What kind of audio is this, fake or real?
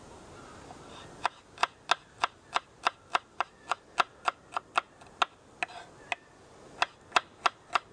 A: real